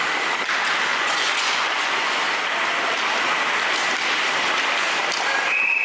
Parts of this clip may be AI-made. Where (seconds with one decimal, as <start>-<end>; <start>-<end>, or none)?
0.9-2.2